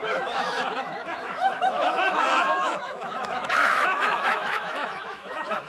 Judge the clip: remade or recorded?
remade